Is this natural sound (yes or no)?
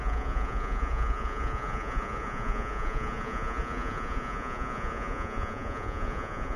no